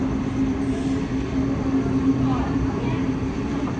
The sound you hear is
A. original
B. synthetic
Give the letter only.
A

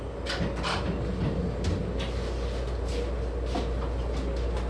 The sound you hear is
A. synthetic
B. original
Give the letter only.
B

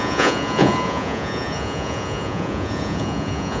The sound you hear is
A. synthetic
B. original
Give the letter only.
A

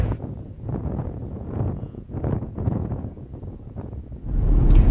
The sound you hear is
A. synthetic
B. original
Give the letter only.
A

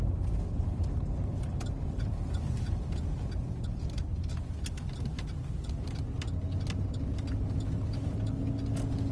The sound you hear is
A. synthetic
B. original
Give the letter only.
B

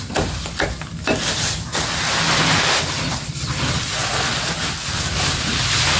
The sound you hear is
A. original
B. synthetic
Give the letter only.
A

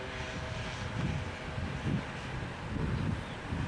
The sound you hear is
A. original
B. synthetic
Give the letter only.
A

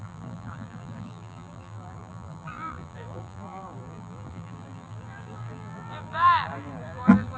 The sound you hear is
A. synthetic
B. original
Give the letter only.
A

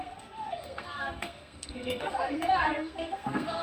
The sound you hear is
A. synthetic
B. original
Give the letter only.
A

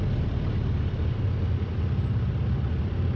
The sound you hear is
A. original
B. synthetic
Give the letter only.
A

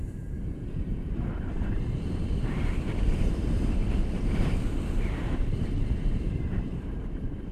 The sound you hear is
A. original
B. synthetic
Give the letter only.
B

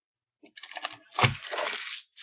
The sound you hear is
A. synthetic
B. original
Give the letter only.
B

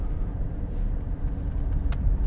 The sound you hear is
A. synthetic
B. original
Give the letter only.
B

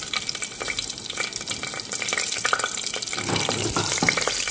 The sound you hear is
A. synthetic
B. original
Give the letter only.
A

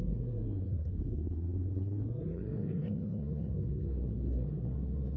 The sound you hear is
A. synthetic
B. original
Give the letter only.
A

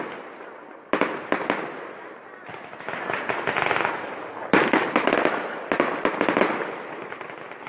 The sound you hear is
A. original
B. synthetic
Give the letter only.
A